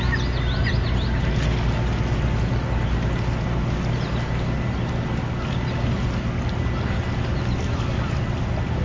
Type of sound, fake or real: real